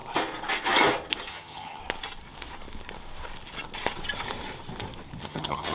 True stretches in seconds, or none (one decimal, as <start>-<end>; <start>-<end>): 0.0-1.3; 1.8-5.2